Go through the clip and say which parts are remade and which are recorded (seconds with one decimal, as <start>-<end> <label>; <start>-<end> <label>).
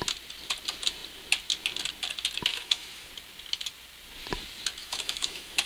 0.0-2.5 recorded; 2.5-3.1 remade; 3.1-4.8 recorded; 4.8-5.7 remade